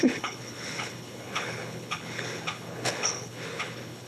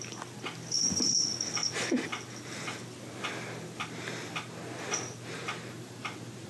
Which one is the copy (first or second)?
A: first